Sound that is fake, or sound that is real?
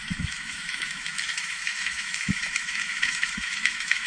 fake